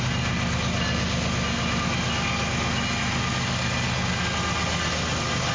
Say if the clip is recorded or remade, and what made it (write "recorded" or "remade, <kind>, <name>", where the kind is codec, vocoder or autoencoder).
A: recorded